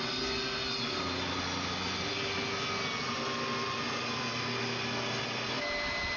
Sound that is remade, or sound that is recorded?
recorded